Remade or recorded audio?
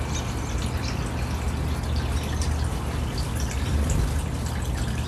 recorded